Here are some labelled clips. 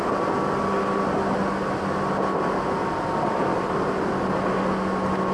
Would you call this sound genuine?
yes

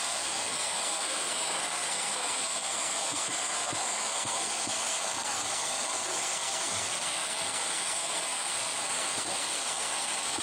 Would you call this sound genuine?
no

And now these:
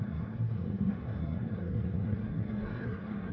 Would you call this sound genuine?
no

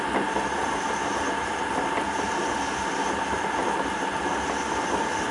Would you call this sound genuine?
yes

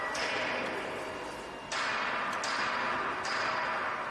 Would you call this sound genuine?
yes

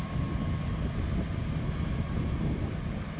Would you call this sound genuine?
yes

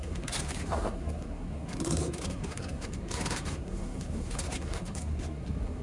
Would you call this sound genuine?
no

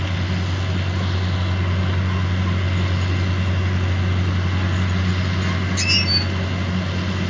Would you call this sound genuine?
yes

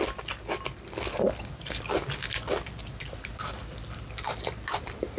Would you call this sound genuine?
yes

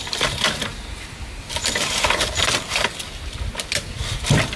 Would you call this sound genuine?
yes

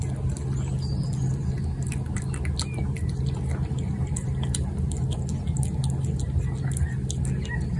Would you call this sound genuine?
yes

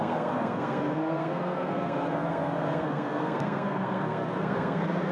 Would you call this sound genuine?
no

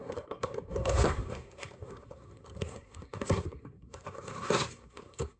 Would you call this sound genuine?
no